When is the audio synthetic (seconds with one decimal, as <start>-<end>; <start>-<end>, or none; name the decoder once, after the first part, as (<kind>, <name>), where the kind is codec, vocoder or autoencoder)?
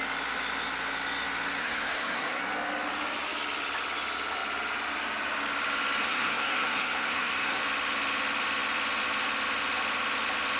1.6-2.4 (codec, SNAC); 6.0-7.6